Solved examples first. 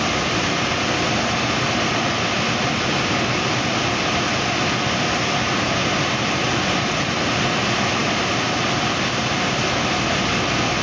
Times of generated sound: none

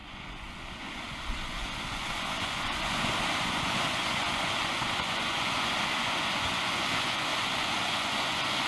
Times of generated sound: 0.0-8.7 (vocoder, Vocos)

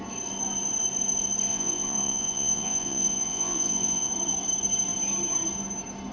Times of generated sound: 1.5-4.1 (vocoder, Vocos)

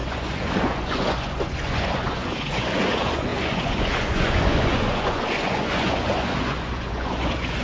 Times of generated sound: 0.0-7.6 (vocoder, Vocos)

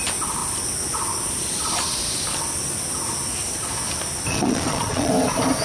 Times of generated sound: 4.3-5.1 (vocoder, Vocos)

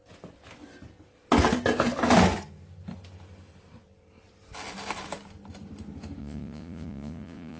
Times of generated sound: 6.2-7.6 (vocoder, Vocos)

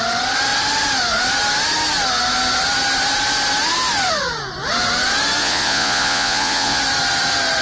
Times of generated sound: 5.4-6.8 (vocoder, Vocos)